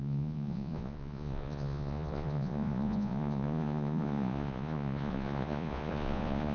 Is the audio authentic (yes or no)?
no